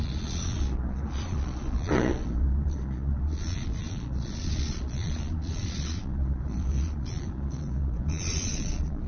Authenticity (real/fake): fake